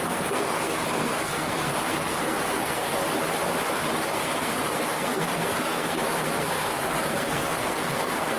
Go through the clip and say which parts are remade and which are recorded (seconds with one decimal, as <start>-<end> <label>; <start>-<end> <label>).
0.0-3.0 remade; 3.0-4.1 recorded; 4.1-8.4 remade